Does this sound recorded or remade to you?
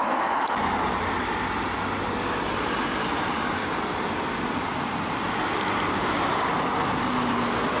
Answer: recorded